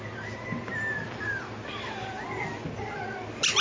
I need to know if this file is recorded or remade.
recorded